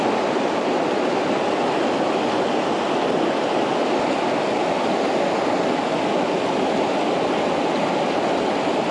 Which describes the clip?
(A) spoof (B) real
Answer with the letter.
B